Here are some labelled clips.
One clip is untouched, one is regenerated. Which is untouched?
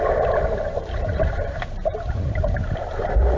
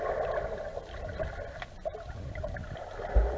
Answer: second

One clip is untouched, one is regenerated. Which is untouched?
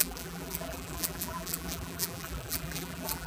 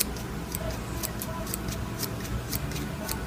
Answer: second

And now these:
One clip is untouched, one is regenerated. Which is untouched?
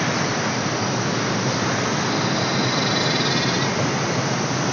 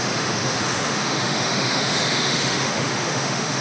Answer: first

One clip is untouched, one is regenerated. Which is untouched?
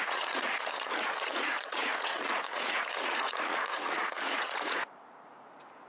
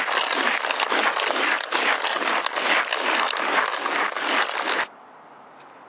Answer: second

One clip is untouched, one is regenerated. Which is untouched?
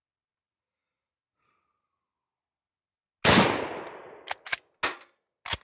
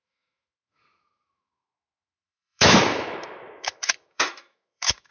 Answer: first